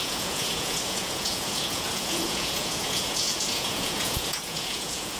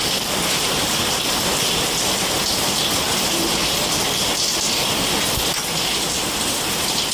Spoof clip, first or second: first